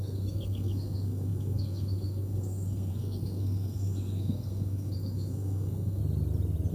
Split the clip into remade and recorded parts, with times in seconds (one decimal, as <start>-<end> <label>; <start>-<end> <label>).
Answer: 0.0-6.0 remade; 6.0-6.7 recorded